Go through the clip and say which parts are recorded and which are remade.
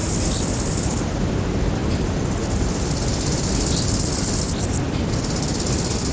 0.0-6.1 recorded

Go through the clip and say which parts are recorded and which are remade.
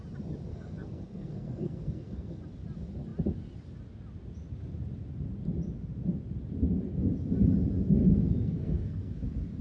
0.0-0.5 recorded; 0.5-2.4 remade; 2.4-8.0 recorded; 8.0-9.2 remade; 9.2-9.6 recorded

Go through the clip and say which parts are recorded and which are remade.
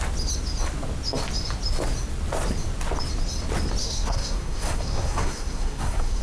0.0-3.8 recorded; 3.8-6.2 remade